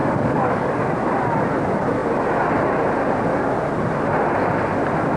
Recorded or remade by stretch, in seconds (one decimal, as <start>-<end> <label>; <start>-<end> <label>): 0.0-0.8 remade; 0.8-5.2 recorded